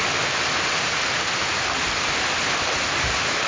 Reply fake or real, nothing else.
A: real